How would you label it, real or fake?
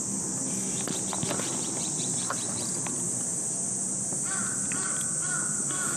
real